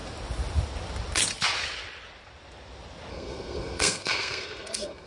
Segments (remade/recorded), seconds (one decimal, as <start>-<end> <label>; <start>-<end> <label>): 0.0-3.1 recorded; 3.1-5.1 remade